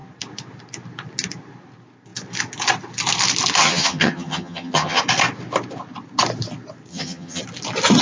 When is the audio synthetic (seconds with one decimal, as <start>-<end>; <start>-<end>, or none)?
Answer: 3.6-5.0; 6.9-7.4